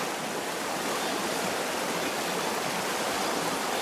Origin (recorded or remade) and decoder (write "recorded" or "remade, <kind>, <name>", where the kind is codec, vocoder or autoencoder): recorded